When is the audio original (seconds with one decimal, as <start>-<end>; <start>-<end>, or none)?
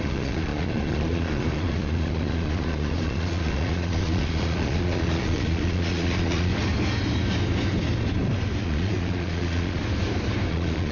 6.5-8.6; 9.8-10.5